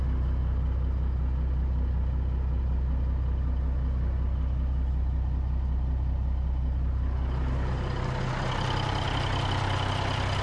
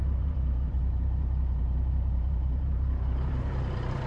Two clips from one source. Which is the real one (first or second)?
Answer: first